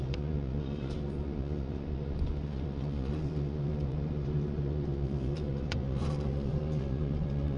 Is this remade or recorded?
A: remade